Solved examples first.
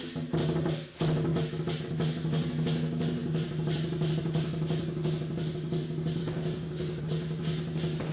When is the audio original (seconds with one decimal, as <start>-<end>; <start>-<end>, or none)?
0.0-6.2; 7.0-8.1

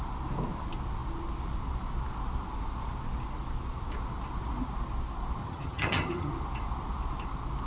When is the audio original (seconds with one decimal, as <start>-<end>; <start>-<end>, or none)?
0.0-5.4; 6.3-7.7

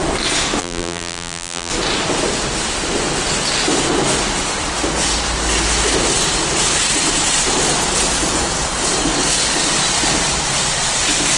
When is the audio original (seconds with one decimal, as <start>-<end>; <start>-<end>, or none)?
0.0-0.6; 1.7-11.4

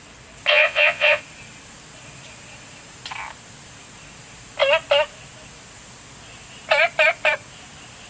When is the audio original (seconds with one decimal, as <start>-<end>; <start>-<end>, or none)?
0.0-0.5; 1.2-8.1

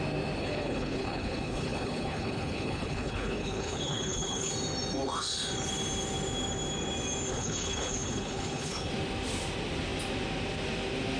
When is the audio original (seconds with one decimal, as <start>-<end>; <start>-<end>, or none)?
0.0-0.4; 4.5-7.3; 8.9-11.2

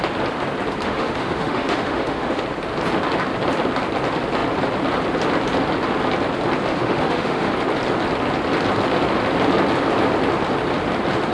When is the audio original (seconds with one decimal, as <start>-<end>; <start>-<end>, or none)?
0.0-0.8; 2.4-6.7; 7.5-11.3

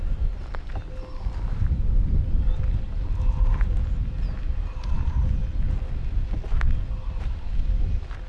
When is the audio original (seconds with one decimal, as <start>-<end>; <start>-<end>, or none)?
0.0-8.3